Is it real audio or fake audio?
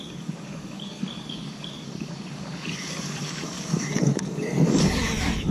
fake